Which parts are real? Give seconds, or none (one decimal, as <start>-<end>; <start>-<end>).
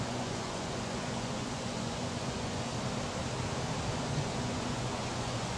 2.7-3.9